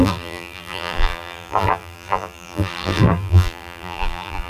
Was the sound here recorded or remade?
remade